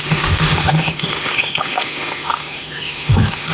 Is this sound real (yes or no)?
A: no